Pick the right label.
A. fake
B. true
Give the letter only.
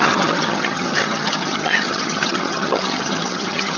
A